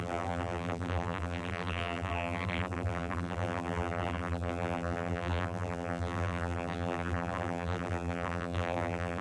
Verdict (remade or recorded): remade